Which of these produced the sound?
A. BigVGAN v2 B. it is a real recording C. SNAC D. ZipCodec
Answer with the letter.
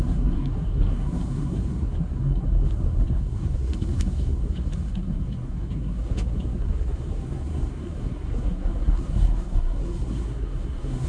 C